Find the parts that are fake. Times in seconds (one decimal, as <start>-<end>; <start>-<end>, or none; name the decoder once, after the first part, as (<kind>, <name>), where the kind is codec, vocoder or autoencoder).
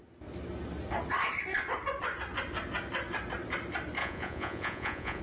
4.0-5.2 (vocoder, Vocos)